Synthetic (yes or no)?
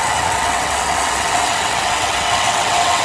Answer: yes